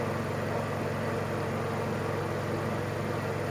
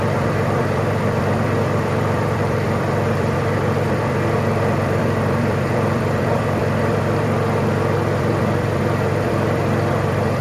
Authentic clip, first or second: first